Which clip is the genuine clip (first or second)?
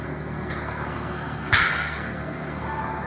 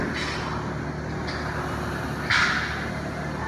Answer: second